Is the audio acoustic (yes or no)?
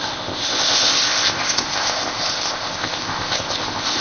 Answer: no